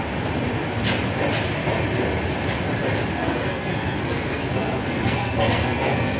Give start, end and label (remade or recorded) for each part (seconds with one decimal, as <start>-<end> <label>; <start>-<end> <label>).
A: 0.0-3.2 recorded; 3.2-6.2 remade